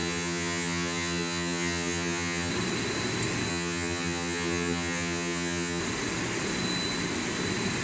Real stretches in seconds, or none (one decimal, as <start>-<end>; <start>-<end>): 2.5-3.5; 5.8-7.8